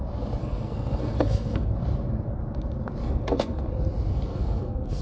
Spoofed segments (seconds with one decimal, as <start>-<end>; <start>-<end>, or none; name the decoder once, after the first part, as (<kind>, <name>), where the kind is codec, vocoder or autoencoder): 0.4-1.7 (codec, SNAC); 3.0-3.6; 4.1-5.0